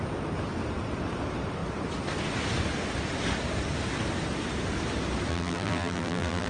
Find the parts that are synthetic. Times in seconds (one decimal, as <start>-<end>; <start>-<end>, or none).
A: 5.3-6.5